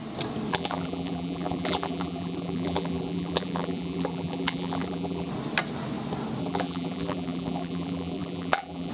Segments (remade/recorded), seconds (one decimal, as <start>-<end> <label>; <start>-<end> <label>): 0.0-0.5 recorded; 0.5-5.3 remade; 5.3-6.4 recorded; 6.4-8.9 remade